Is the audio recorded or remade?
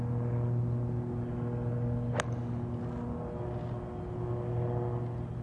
recorded